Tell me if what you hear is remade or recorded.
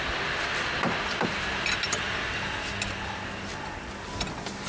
recorded